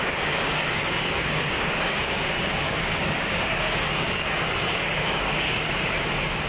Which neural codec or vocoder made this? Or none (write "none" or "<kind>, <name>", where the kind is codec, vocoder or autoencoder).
codec, DAC